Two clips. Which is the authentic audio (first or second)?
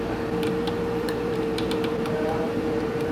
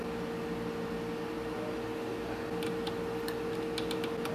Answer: second